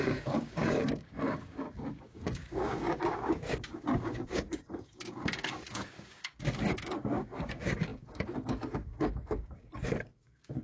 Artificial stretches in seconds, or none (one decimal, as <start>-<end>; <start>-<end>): 0.0-10.6